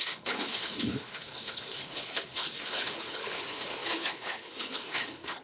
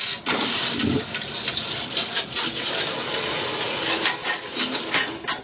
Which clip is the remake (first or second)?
first